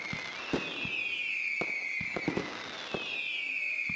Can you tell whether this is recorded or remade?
recorded